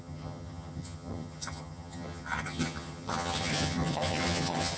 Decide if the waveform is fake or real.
fake